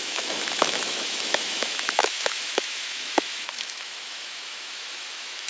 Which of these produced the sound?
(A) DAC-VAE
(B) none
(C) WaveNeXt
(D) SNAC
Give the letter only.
A